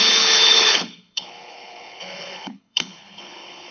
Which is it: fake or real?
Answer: fake